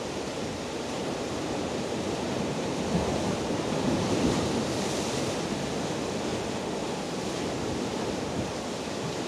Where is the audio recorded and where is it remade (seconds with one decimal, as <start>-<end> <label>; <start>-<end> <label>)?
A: 0.0-1.0 recorded; 1.0-4.6 remade; 4.6-9.3 recorded